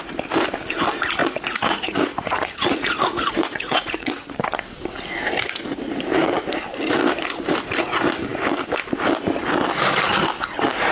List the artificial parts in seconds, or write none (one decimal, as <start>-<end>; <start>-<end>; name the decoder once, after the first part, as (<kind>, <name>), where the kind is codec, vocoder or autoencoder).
1.2-4.1 (vocoder, Vocos)